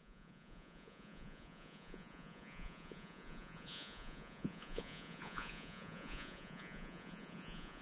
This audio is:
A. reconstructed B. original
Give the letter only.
A